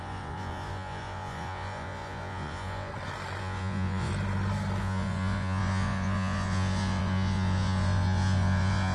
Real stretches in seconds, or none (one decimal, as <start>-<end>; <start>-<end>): 2.9-3.4; 4.1-4.8